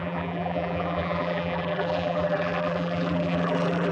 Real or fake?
fake